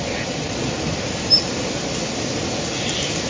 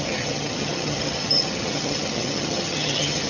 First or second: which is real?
first